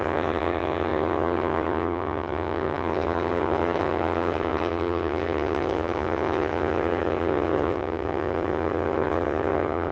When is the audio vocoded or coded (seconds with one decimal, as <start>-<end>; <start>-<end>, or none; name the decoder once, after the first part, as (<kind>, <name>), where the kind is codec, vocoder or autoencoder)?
0.0-9.9 (vocoder, HiFi-GAN)